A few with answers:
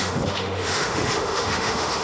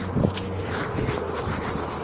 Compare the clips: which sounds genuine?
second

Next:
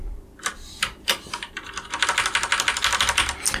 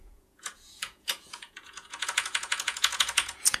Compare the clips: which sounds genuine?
first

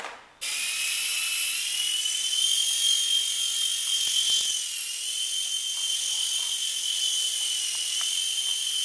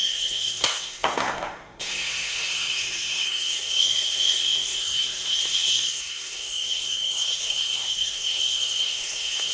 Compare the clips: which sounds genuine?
first